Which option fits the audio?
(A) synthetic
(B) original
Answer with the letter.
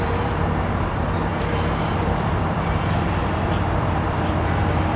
A